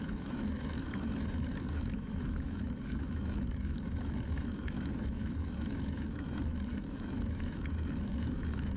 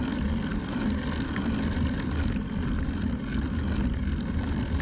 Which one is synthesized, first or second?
first